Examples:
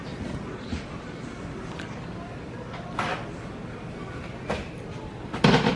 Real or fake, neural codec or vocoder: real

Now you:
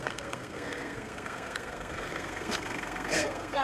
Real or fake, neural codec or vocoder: fake, codec, SNAC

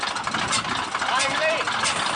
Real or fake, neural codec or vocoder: real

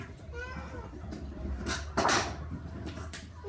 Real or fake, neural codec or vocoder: real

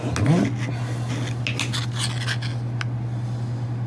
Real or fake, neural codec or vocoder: real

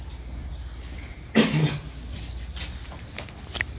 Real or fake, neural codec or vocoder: real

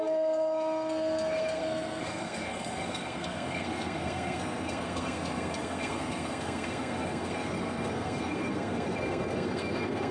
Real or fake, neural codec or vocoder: fake, codec, SNAC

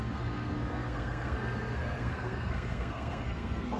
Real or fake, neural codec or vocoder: fake, codec, SNAC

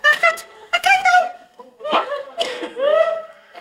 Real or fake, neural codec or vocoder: fake, codec, SNAC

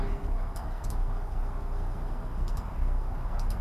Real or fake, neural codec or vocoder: fake, codec, SNAC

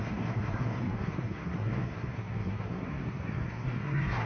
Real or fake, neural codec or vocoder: fake, codec, SNAC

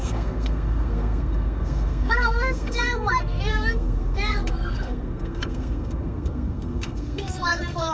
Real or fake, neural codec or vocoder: fake, codec, SNAC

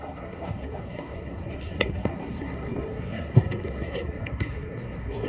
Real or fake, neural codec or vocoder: fake, codec, SNAC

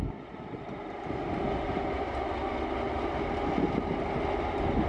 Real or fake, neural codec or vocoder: real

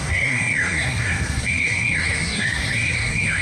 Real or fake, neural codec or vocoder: fake, codec, SNAC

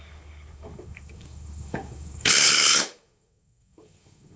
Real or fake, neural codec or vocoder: fake, codec, SNAC